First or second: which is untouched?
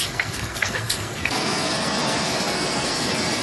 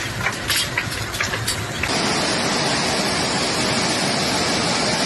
second